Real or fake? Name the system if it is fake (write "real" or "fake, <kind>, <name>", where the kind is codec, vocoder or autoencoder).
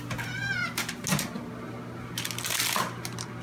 real